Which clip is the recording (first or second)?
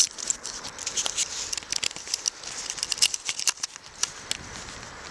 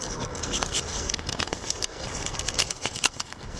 first